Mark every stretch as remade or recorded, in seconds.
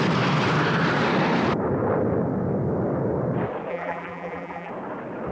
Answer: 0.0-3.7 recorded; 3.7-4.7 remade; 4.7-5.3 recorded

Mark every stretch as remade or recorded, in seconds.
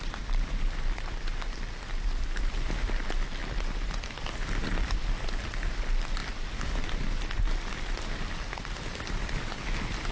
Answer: 0.0-6.2 remade; 6.2-8.7 recorded; 8.7-10.1 remade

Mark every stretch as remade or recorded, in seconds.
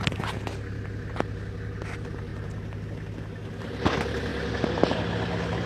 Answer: 0.0-5.7 recorded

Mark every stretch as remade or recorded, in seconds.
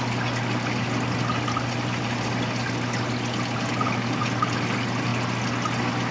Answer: 0.0-6.1 recorded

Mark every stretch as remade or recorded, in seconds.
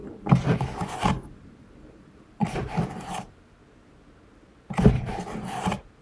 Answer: 0.0-3.6 remade; 3.6-6.0 recorded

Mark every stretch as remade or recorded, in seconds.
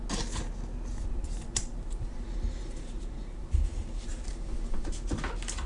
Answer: 0.0-0.9 recorded; 0.9-4.3 remade; 4.3-5.7 recorded